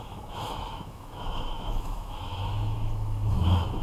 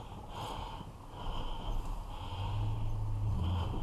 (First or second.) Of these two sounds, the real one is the second